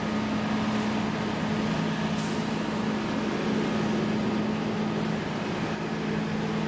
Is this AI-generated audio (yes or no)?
no